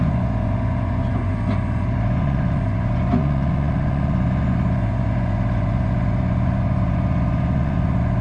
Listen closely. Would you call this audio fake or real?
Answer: fake